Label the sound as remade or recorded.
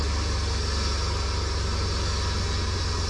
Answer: recorded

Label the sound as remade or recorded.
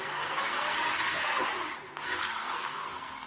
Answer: remade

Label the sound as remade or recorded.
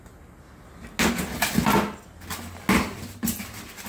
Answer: recorded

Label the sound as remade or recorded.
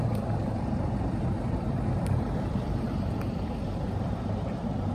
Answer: remade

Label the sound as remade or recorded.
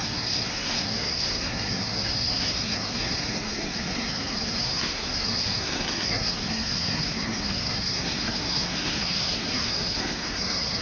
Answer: remade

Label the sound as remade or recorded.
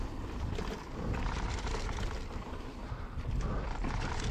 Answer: recorded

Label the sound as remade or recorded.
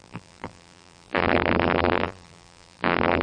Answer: remade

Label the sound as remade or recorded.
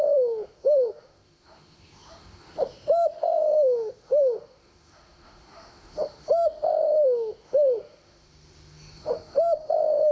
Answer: remade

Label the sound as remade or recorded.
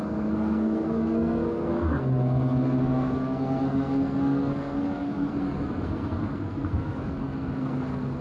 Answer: remade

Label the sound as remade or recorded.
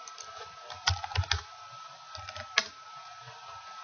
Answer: recorded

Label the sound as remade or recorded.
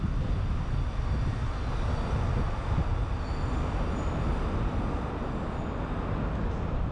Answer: recorded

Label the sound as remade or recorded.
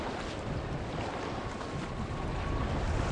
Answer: recorded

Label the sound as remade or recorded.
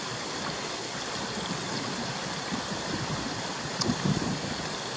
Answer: recorded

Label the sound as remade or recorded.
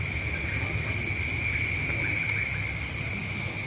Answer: recorded